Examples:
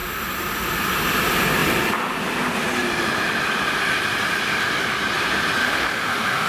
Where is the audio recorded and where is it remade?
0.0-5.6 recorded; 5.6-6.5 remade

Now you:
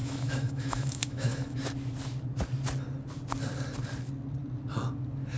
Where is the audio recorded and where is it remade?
0.0-1.6 remade; 1.6-5.4 recorded

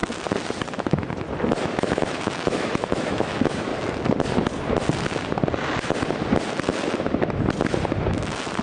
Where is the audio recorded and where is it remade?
0.0-1.6 recorded; 1.6-3.7 remade; 3.7-8.6 recorded